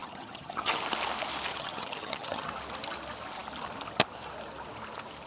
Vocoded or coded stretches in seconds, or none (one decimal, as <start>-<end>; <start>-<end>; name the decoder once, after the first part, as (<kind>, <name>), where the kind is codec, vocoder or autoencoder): 0.0-0.8 (vocoder, HiFi-GAN); 1.5-2.5

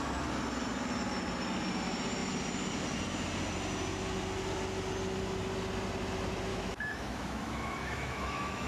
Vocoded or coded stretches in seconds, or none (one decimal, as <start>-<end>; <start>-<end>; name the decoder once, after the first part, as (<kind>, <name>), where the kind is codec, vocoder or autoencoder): 6.5-8.7 (autoencoder, DAC-VAE)

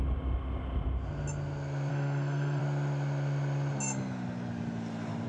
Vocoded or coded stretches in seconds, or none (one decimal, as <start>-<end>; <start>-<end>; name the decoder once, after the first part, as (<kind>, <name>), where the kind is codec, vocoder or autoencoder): 1.9-2.6 (codec, SNAC)